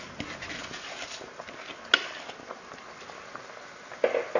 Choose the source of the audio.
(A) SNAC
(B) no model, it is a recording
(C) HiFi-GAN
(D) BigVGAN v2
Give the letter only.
B